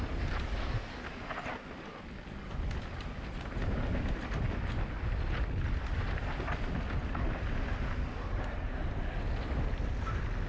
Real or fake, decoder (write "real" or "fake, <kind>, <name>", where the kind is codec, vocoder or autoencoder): real